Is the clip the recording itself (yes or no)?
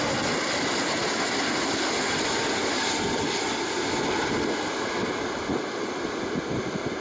yes